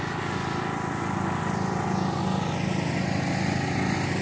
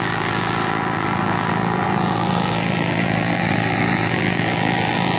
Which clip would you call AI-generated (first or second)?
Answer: second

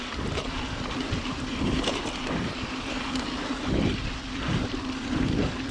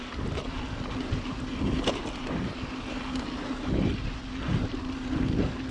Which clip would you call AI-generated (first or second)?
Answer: first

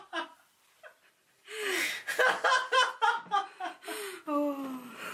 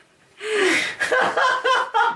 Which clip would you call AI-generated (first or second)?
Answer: second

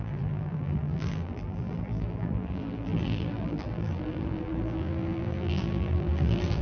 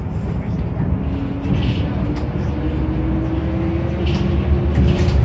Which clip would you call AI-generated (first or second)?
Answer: first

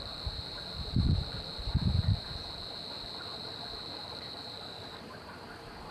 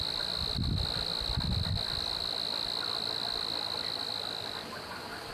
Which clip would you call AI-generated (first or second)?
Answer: first